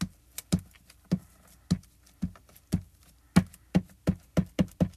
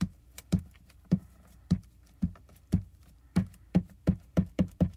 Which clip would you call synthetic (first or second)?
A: second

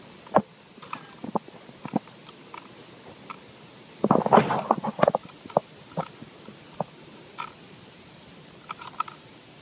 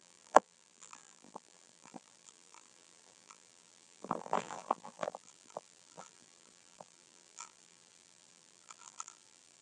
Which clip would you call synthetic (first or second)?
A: second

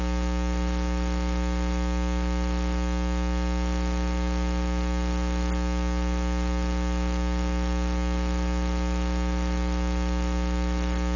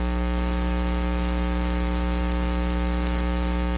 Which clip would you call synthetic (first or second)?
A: second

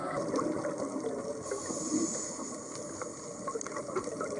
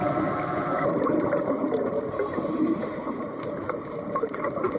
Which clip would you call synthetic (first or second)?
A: second